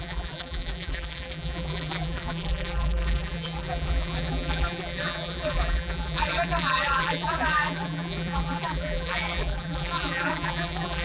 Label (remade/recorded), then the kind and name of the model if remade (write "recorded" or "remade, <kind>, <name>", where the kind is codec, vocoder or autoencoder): remade, vocoder, BigVGAN v2